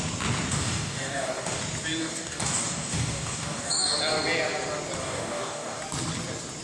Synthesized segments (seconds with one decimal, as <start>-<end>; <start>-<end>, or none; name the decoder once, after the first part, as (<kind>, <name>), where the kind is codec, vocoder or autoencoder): 0.5-1.6 (codec, DAC); 2.0-4.0; 5.0-5.8